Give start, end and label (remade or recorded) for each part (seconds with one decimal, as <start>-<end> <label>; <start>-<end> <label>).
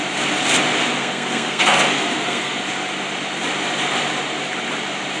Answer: 0.0-1.0 recorded; 1.0-2.6 remade; 2.6-5.2 recorded